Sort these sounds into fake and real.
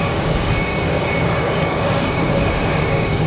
fake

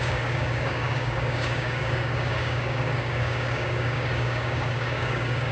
fake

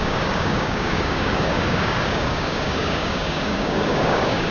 fake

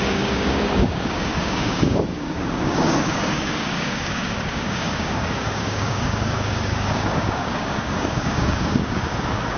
fake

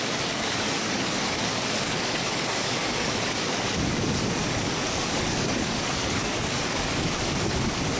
fake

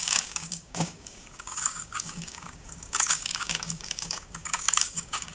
fake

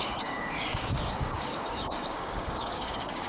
fake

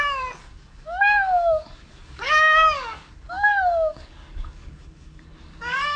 fake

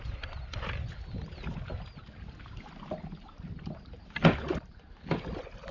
real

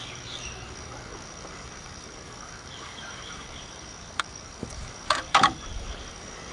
fake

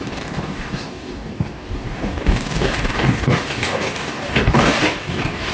fake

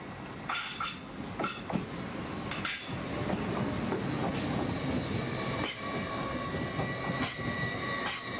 real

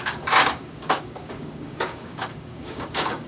fake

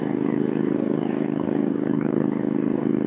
fake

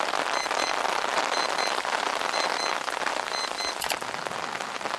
real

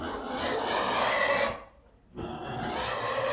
real